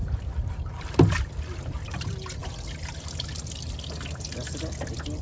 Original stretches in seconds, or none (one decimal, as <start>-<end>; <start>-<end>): 0.0-5.2